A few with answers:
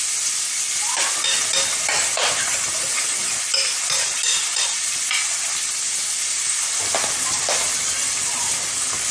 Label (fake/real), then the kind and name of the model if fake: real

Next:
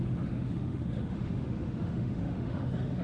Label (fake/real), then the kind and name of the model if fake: fake, autoencoder, DAC-VAE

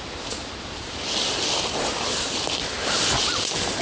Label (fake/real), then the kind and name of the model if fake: real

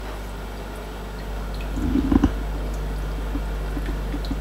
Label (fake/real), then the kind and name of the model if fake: real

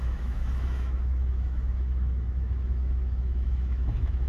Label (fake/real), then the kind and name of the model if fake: fake, autoencoder, DAC-VAE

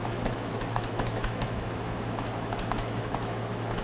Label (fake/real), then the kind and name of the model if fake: fake, autoencoder, DAC-VAE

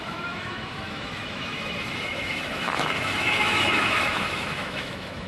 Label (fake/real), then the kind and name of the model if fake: fake, autoencoder, DAC-VAE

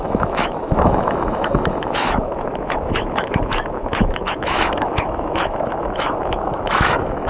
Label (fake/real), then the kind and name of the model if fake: fake, autoencoder, DAC-VAE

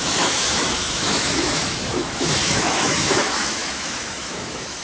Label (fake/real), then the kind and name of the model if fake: fake, autoencoder, DAC-VAE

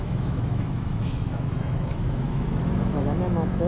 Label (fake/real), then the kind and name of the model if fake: fake, autoencoder, DAC-VAE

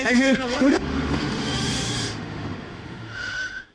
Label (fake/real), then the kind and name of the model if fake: fake, autoencoder, DAC-VAE